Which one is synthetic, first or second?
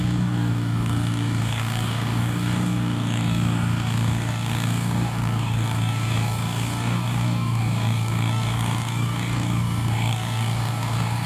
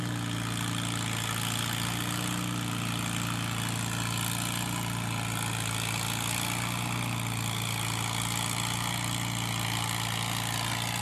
first